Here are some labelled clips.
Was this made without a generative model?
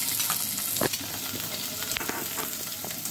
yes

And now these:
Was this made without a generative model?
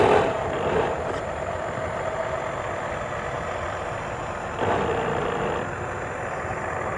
yes